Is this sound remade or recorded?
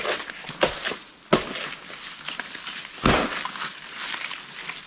recorded